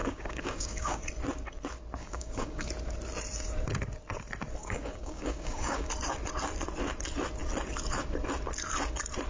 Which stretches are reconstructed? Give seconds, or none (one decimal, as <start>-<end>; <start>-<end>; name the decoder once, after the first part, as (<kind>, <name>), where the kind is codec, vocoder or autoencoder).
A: 0.0-1.0 (codec, DAC); 2.0-2.7; 4.6-5.9